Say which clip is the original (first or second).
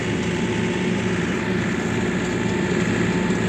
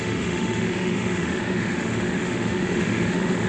first